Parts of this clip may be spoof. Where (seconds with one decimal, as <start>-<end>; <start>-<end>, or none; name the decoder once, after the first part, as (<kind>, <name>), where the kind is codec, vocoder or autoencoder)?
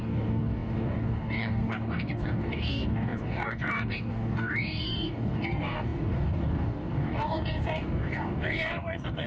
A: 0.0-9.3 (codec, DAC)